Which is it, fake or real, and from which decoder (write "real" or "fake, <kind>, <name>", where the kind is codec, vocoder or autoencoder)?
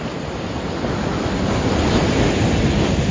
real